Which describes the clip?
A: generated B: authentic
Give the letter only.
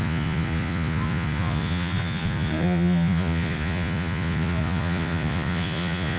A